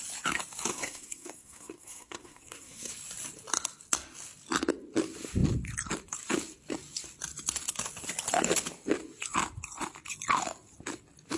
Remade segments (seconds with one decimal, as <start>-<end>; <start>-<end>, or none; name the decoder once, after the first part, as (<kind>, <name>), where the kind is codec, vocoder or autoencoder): 0.7-2.9 (codec, SNAC)